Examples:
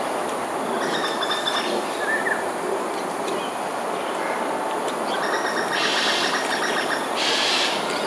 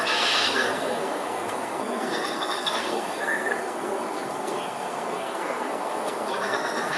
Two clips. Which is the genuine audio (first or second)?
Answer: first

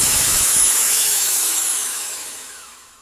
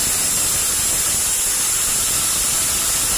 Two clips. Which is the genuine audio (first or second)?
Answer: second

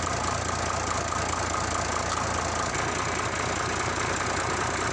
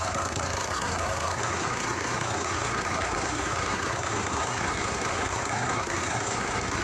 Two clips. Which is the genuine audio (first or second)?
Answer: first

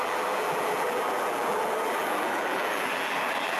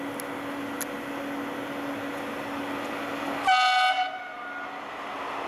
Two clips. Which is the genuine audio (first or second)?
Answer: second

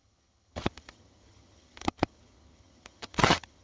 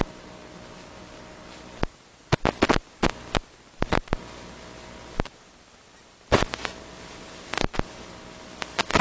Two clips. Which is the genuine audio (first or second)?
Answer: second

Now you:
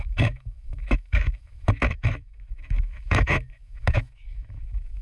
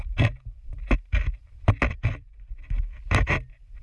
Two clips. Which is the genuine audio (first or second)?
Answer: second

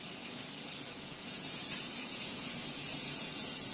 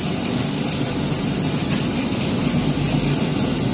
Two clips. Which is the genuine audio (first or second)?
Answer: second